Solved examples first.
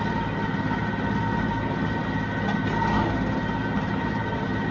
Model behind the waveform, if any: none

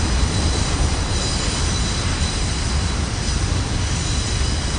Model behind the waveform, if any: none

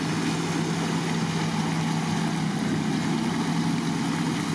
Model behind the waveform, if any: none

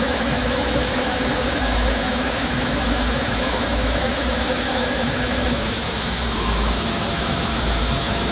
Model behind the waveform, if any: autoencoder, DAC-VAE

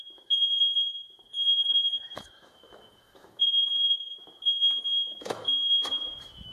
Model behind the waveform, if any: autoencoder, DAC-VAE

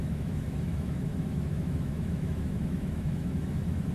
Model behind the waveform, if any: autoencoder, DAC-VAE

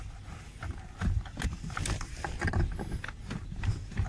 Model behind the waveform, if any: none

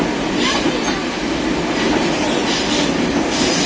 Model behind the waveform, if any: none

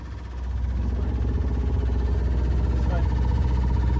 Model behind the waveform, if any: none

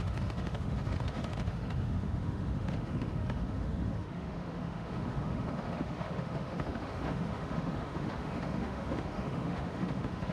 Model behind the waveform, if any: autoencoder, DAC-VAE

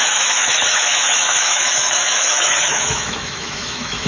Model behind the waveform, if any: autoencoder, DAC-VAE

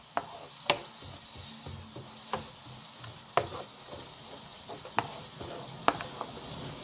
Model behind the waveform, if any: none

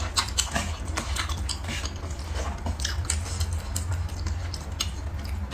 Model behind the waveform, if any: none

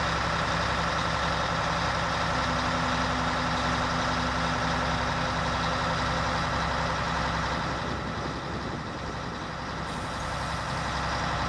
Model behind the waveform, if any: none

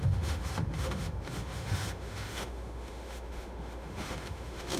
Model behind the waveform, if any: autoencoder, DAC-VAE